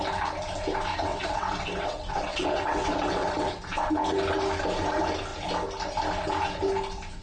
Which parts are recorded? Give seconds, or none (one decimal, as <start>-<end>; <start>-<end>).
0.0-1.1; 3.6-7.2